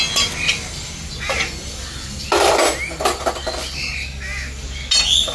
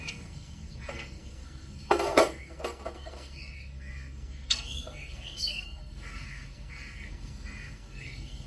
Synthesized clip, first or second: second